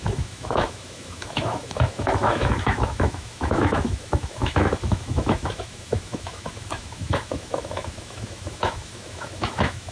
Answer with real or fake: fake